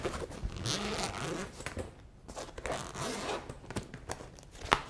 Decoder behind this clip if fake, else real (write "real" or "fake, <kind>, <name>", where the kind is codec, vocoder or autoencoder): real